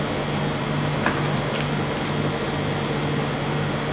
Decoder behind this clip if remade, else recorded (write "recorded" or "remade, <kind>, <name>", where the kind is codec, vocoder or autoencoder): recorded